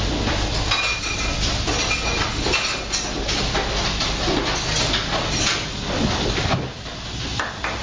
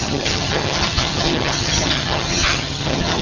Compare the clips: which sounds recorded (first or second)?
first